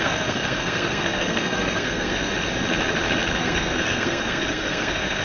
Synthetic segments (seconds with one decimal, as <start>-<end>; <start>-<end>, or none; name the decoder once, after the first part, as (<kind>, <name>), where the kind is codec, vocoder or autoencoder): 0.0-2.3 (codec, SNAC); 3.4-5.2